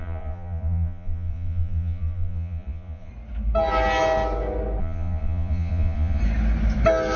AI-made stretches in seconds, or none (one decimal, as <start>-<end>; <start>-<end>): 0.0-3.1; 4.8-6.2